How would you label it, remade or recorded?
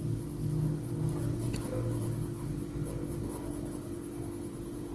recorded